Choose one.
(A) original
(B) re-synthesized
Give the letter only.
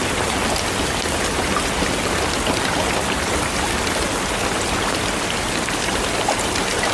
A